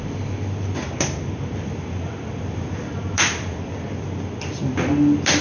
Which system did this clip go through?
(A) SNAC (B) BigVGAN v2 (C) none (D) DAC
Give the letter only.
C